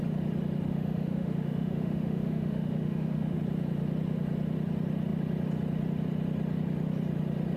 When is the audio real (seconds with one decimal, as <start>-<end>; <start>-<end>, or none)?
0.0-0.7; 3.4-7.6